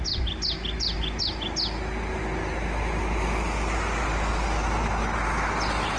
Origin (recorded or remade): recorded